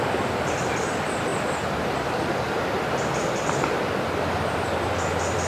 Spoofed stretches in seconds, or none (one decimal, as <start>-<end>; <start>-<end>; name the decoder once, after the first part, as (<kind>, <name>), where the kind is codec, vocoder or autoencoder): none